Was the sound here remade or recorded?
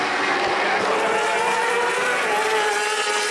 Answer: recorded